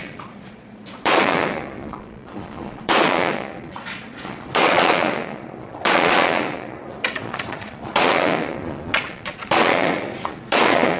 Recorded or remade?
remade